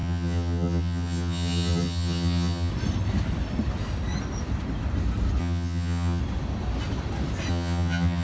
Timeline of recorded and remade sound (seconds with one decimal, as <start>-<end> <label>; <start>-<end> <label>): 0.0-2.7 remade; 2.7-5.4 recorded; 5.4-6.2 remade; 6.2-7.5 recorded; 7.5-8.2 remade